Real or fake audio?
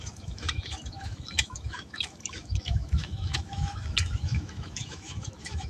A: fake